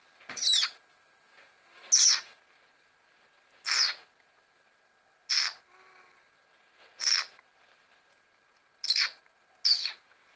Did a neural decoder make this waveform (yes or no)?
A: no